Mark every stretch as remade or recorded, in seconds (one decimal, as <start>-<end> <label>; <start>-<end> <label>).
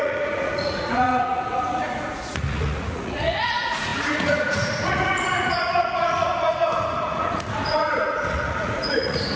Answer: 0.0-9.4 remade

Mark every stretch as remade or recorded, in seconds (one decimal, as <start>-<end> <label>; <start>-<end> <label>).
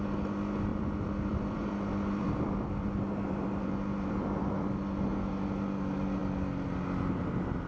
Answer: 0.0-0.7 recorded; 0.7-5.3 remade; 5.3-7.7 recorded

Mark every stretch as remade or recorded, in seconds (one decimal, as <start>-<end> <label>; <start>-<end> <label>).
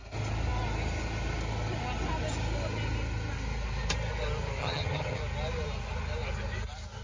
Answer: 0.0-4.6 recorded; 4.6-5.2 remade; 5.2-7.0 recorded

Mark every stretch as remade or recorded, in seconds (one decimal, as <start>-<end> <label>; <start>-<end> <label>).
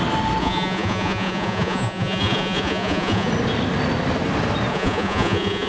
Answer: 0.0-0.4 recorded; 0.4-3.3 remade; 3.3-4.7 recorded; 4.7-5.7 remade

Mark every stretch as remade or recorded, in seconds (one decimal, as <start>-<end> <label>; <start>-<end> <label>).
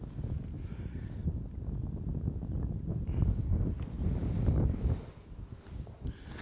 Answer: 0.0-6.4 recorded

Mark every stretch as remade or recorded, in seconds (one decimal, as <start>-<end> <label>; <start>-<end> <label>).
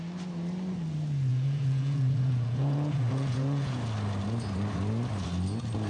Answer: 0.0-1.3 recorded; 1.3-3.8 remade; 3.8-5.9 recorded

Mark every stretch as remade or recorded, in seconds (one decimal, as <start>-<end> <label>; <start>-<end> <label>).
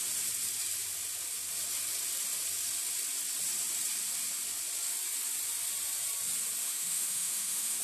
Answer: 0.0-6.6 recorded; 6.6-7.8 remade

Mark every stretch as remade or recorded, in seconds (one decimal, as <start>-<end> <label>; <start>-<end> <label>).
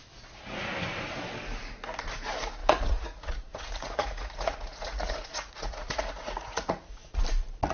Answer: 0.0-2.6 recorded; 2.6-7.2 remade; 7.2-7.7 recorded